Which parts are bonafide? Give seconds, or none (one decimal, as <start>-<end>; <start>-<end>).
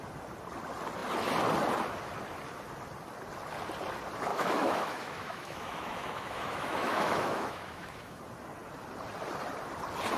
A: 0.0-4.3; 8.2-10.2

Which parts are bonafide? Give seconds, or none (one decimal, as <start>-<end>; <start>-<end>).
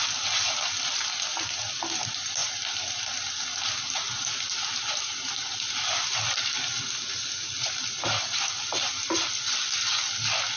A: 0.0-10.6